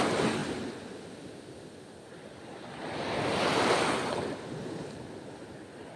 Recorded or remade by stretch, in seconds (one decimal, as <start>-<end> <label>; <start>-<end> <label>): 0.0-6.0 recorded